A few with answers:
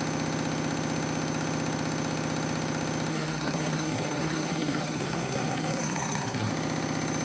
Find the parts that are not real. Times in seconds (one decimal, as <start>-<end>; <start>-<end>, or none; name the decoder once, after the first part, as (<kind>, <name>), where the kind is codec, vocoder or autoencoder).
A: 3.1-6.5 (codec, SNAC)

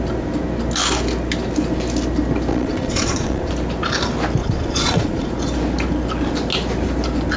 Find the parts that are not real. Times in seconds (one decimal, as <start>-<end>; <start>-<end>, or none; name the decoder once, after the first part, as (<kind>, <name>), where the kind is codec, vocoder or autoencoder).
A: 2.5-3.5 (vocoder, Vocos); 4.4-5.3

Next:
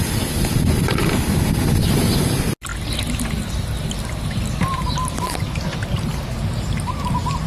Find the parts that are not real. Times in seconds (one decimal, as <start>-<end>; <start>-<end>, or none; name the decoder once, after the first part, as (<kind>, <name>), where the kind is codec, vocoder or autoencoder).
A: none